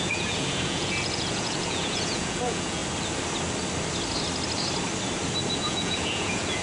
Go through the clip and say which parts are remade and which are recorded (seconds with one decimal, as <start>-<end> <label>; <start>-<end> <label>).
0.0-2.8 remade; 2.8-5.6 recorded; 5.6-6.6 remade